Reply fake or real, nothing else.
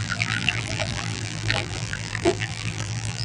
fake